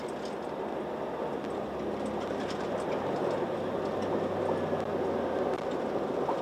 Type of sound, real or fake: real